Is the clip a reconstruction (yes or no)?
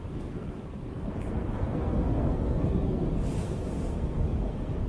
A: yes